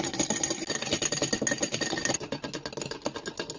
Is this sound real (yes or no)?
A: yes